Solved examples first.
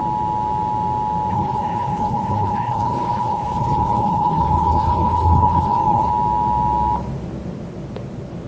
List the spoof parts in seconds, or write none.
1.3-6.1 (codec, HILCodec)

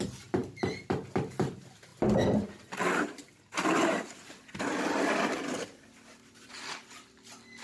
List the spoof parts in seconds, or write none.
none

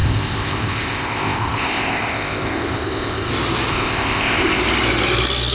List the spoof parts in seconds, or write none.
0.0-3.3 (codec, ZipCodec); 3.7-4.6

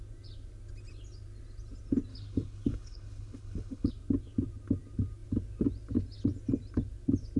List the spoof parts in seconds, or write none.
2.1-3.9 (codec, HILCodec)

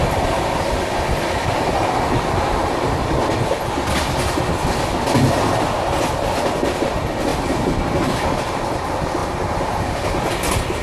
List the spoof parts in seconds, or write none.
none

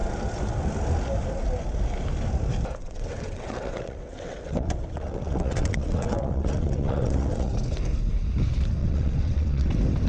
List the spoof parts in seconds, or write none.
2.8-7.5 (vocoder, WaveNeXt); 8.8-9.7

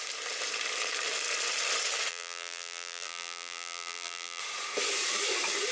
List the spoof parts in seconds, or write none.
2.1-4.4 (vocoder, BigVGAN v2)